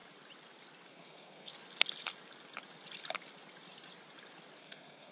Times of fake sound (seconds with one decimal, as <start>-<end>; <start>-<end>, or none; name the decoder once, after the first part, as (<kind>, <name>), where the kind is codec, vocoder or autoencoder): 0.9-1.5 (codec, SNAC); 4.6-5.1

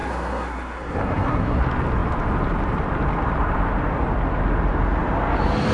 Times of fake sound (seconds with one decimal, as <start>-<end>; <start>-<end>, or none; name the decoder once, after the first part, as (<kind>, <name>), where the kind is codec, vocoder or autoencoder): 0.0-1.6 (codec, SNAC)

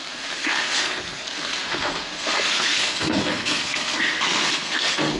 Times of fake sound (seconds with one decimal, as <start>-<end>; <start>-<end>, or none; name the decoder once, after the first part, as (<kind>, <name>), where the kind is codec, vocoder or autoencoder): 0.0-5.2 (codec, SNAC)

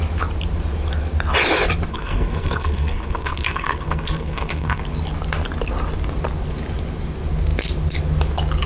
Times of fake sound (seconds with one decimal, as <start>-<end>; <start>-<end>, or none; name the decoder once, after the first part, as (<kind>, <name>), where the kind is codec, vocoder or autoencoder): 1.9-4.8 (codec, SNAC)

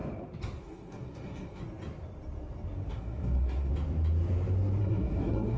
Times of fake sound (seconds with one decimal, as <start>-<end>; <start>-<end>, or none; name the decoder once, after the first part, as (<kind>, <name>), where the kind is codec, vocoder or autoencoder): 0.6-1.6 (codec, SNAC); 2.9-3.7; 4.8-5.6

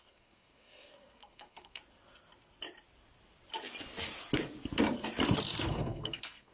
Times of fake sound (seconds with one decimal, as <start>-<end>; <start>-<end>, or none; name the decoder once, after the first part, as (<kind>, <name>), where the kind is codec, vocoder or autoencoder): 0.0-1.8 (codec, SNAC); 5.7-6.5

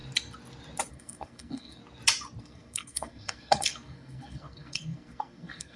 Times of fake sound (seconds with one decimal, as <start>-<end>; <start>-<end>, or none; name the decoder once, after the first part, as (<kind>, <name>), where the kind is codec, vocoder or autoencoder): 0.9-1.8 (codec, SNAC); 2.4-5.8

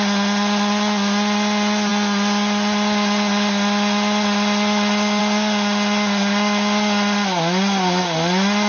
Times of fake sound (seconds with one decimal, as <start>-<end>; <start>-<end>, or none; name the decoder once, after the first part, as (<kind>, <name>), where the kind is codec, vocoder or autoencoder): none